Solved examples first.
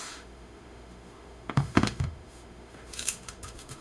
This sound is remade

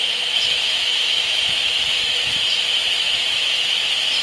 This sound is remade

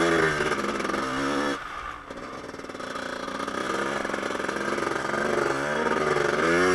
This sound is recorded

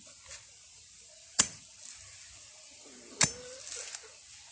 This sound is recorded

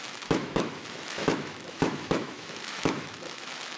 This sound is remade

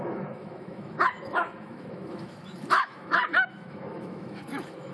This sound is remade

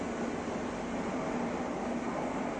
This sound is recorded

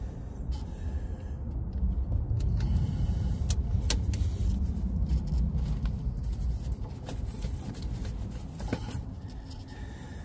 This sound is recorded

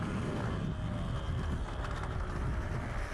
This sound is recorded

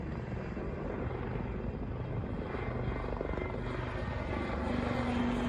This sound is recorded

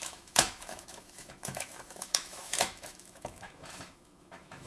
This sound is remade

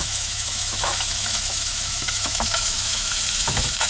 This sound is remade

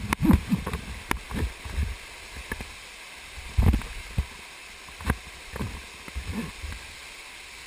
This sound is recorded